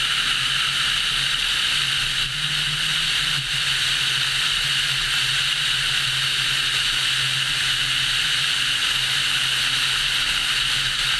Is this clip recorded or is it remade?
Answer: recorded